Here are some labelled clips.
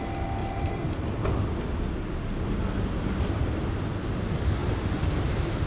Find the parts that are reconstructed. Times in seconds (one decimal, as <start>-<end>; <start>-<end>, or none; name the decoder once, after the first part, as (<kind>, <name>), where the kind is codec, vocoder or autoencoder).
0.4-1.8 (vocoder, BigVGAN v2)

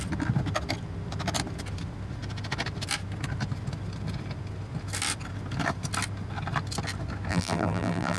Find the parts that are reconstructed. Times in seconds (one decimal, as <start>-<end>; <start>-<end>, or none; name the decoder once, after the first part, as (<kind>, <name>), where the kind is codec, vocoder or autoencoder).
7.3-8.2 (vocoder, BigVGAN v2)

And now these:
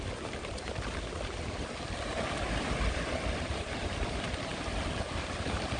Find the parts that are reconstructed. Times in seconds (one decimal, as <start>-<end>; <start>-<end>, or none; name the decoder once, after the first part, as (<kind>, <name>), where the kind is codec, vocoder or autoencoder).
0.0-5.8 (vocoder, BigVGAN v2)

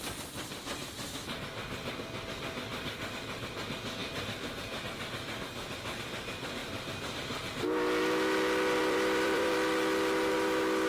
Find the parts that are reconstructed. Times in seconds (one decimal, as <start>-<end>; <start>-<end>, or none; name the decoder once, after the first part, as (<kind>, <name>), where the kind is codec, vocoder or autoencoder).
2.7-3.5 (vocoder, BigVGAN v2); 8.8-9.5